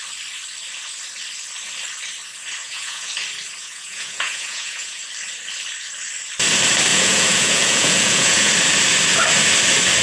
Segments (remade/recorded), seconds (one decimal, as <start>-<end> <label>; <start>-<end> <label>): 0.0-2.6 recorded; 2.6-3.1 remade; 3.1-3.6 recorded; 3.6-5.0 remade; 5.0-6.9 recorded; 6.9-8.5 remade; 8.5-10.0 recorded